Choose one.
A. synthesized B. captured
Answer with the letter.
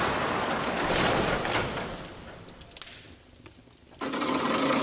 B